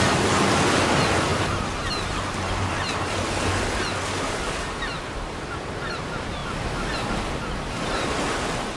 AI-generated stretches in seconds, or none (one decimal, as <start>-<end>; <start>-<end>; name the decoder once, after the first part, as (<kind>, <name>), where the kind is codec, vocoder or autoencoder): none